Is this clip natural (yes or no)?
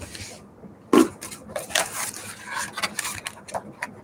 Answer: yes